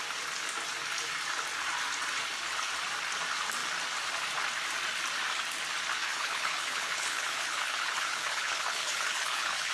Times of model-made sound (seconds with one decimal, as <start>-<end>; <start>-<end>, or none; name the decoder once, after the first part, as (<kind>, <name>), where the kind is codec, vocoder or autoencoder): 6.0-9.7 (codec, HILCodec)

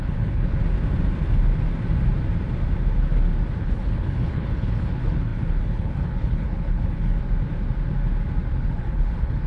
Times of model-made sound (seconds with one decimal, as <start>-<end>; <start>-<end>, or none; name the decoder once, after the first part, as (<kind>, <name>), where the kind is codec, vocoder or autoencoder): 0.0-0.6 (codec, HILCodec); 3.6-7.2; 8.5-9.5

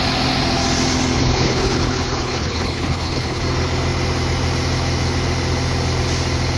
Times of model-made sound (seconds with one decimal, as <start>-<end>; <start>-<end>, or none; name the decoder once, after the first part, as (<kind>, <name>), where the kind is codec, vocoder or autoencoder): 1.2-3.4 (codec, HILCodec)

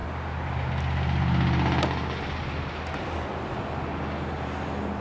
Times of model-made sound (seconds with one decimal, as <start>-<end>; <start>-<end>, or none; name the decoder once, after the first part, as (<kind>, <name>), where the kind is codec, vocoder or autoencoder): none

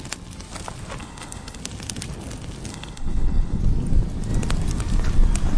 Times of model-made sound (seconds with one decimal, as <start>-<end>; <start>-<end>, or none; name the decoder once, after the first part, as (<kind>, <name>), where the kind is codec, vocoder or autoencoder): 1.0-1.6 (codec, HILCodec); 2.7-3.6

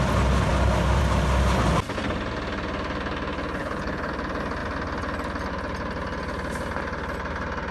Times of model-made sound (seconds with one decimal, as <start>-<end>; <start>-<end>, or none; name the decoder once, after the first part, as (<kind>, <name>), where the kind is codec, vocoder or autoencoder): 3.6-4.1 (codec, HILCodec)

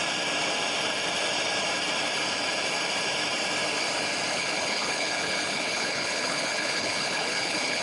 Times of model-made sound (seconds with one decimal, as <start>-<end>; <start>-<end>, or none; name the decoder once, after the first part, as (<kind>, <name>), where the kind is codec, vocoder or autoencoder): 4.3-7.8 (codec, HILCodec)

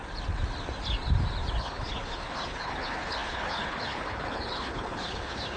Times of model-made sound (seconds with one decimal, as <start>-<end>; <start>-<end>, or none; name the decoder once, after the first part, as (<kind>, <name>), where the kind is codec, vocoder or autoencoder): 1.6-5.6 (codec, HILCodec)